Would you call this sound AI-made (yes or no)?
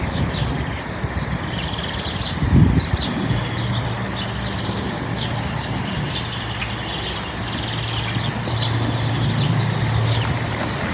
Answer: no